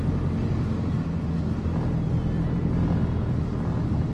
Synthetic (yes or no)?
no